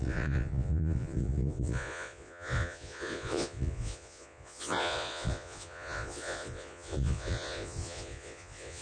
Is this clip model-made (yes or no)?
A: yes